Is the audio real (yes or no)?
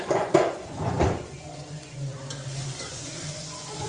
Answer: no